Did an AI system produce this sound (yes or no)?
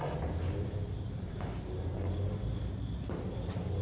yes